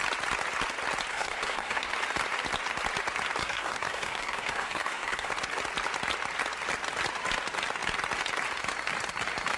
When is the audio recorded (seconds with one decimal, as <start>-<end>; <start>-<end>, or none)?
0.0-1.1; 1.9-3.4; 5.3-9.6

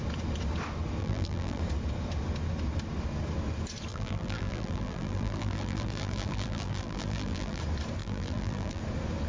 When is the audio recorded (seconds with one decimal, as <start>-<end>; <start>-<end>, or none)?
0.0-1.0; 1.6-3.9; 7.6-8.0; 8.8-9.3

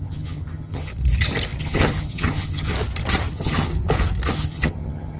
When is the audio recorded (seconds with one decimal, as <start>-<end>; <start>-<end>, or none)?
0.9-1.6; 2.7-3.3; 3.7-4.3

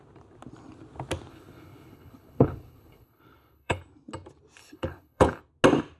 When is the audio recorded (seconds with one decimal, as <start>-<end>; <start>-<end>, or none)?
0.0-1.3; 3.8-4.6; 5.4-6.0

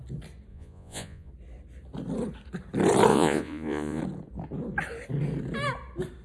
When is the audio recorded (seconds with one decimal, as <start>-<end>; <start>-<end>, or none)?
0.0-0.5; 1.3-3.1; 4.0-6.2